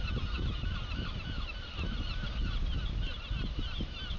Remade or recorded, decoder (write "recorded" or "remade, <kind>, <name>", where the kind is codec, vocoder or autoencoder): recorded